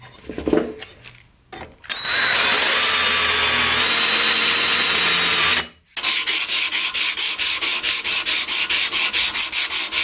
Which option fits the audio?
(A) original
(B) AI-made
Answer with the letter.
A